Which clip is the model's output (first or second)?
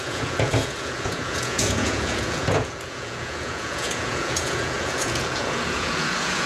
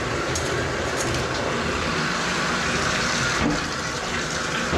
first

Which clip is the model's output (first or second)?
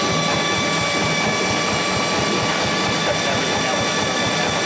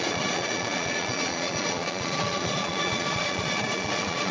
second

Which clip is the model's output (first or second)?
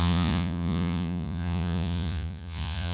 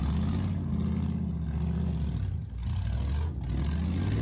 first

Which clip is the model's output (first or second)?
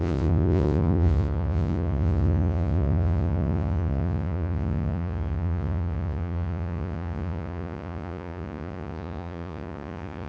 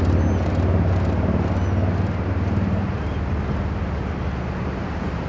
first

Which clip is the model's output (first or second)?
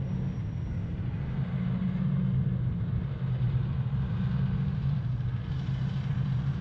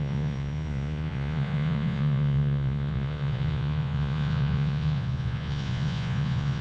second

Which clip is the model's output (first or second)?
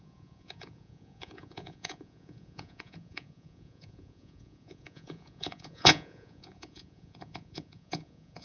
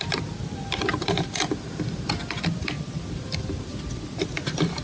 first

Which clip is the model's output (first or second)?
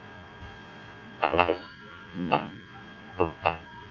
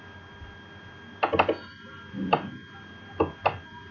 first